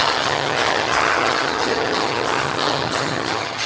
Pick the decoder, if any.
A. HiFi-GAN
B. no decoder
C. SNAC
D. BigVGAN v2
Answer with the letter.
A